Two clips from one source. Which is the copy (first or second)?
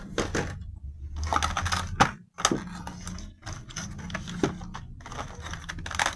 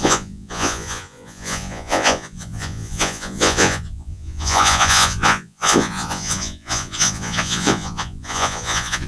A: second